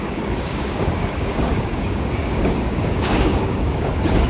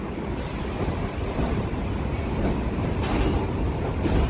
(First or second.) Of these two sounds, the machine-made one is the first